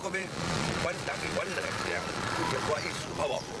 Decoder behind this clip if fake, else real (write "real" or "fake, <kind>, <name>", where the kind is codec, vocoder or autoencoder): fake, vocoder, Vocos